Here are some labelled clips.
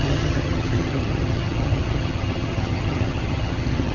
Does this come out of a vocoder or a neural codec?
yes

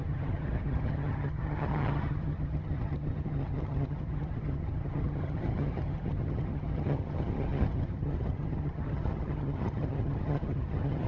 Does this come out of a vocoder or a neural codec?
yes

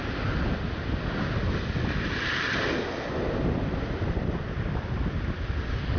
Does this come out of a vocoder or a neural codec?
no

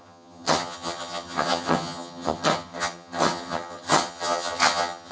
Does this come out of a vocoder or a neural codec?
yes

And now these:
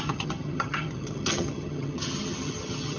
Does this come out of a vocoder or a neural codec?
yes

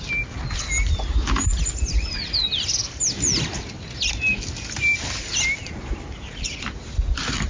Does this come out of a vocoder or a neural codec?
no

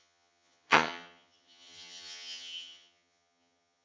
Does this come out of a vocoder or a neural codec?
yes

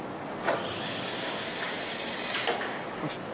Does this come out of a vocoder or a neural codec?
no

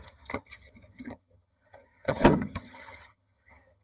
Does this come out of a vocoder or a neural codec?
yes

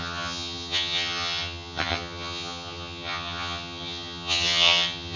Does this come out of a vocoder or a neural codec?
yes